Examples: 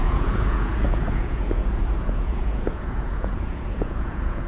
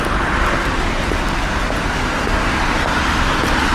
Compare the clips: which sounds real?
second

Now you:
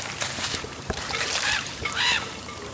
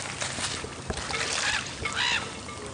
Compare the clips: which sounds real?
second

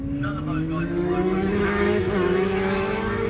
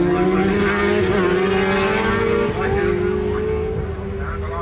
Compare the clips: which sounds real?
second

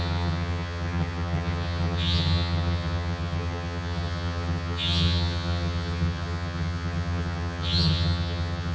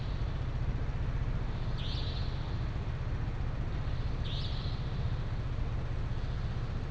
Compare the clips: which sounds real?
second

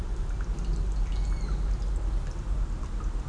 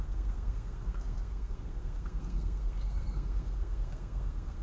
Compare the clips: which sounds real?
first